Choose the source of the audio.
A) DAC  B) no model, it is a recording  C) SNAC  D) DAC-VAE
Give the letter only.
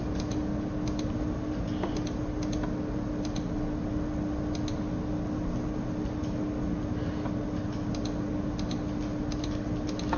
B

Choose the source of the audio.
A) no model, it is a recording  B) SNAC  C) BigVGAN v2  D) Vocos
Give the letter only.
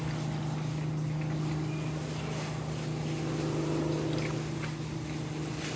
A